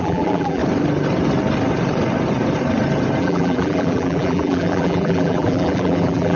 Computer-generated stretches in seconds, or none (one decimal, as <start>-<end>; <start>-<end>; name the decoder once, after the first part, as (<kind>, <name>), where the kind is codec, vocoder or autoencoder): 0.0-0.6 (vocoder, BigVGAN v2); 3.2-6.4